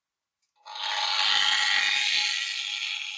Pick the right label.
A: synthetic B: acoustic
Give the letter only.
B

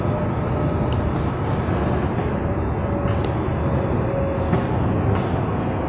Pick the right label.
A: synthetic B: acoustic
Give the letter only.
B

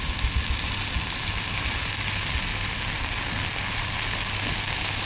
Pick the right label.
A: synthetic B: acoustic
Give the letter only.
B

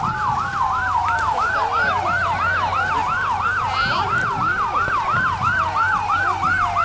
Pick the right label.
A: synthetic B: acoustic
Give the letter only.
B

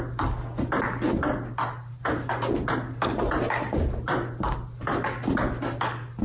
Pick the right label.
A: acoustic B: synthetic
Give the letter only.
A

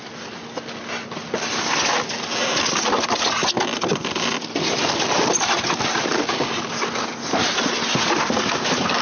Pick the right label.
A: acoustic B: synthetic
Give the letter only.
A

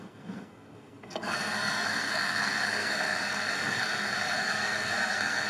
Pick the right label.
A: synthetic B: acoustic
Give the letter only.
A